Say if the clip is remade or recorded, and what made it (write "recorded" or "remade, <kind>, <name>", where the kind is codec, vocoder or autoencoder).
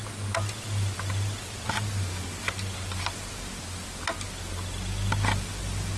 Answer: recorded